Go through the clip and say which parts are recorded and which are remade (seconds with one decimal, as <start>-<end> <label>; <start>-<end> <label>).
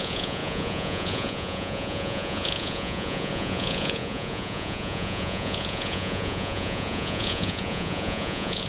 0.0-8.7 remade